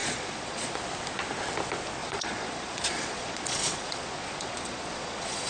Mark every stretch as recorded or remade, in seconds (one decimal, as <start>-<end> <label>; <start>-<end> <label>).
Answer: 0.0-0.8 remade; 0.8-2.0 recorded; 2.0-5.5 remade